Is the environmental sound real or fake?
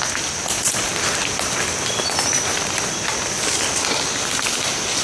real